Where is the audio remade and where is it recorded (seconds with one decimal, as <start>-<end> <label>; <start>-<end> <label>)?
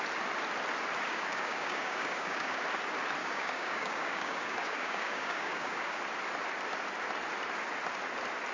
0.0-1.1 recorded; 1.1-2.6 remade; 2.6-3.2 recorded; 3.2-6.0 remade; 6.0-8.5 recorded